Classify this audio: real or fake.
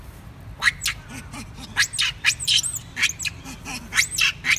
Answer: real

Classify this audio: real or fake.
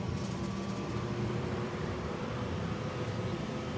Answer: fake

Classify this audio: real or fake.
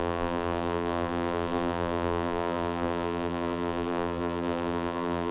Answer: fake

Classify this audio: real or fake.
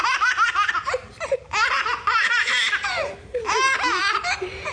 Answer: fake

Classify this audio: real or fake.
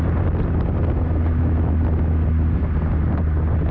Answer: real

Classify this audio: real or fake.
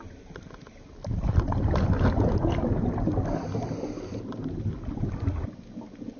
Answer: real